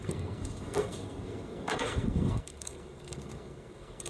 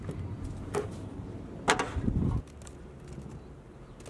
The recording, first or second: second